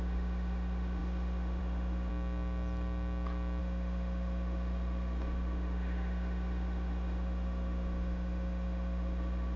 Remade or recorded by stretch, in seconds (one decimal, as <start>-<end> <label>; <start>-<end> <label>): 0.0-2.1 remade; 2.1-3.6 recorded; 3.6-9.6 remade